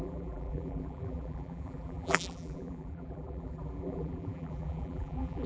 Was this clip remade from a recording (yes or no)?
yes